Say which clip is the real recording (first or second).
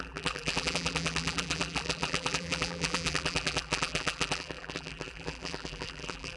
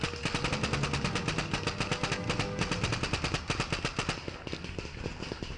second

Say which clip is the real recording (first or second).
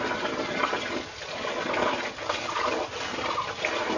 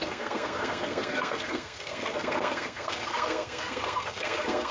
first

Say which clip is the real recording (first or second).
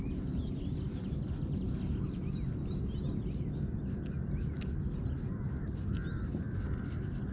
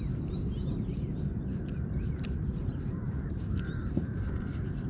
first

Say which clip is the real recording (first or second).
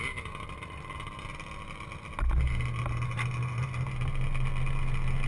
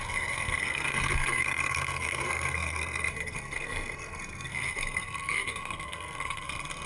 first